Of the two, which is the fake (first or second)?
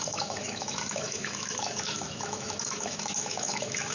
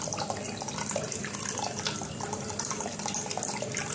first